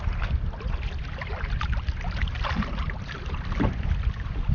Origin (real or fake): real